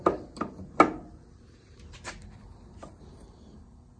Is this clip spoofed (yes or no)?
no